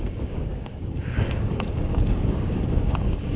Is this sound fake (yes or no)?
yes